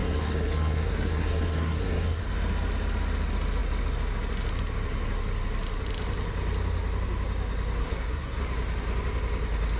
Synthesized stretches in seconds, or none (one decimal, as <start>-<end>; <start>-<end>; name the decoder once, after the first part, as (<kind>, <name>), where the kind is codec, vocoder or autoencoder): 0.0-2.2 (codec, SNAC); 7.8-8.4